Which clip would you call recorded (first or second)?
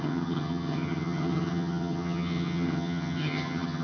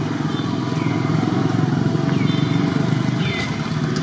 second